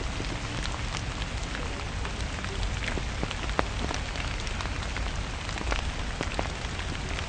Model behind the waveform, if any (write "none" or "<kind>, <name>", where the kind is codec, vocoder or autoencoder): none